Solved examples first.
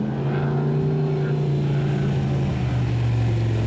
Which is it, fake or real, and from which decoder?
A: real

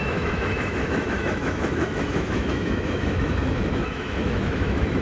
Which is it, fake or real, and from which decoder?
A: fake, autoencoder, DAC-VAE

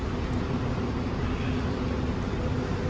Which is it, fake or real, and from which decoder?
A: real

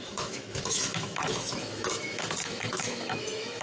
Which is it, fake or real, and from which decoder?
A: fake, autoencoder, DAC-VAE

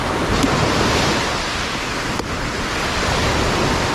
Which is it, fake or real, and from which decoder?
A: real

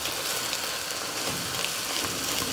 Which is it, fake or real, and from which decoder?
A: real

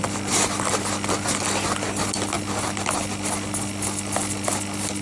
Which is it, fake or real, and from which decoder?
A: real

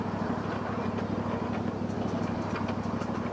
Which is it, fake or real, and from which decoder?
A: real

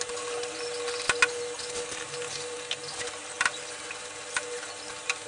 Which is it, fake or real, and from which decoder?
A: real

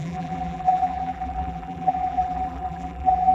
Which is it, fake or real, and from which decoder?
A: fake, vocoder, BigVGAN v2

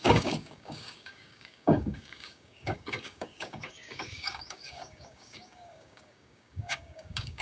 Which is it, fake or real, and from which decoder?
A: fake, codec, DAC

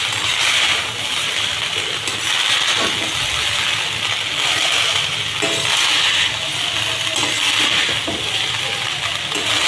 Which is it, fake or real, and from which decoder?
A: real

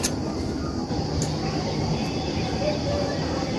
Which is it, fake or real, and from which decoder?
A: real